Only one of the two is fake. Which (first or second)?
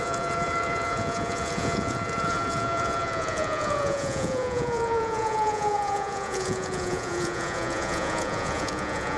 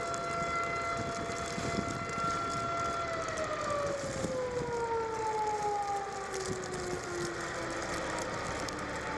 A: first